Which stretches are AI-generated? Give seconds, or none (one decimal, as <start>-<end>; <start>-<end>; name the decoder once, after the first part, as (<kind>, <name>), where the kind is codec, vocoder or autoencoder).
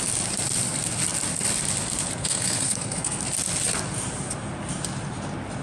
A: 2.2-3.2 (codec, SNAC)